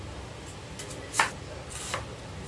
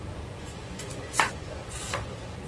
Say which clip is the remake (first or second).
second